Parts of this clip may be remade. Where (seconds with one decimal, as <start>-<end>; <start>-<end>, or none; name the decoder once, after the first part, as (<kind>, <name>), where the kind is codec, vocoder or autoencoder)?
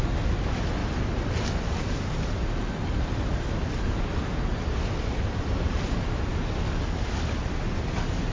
none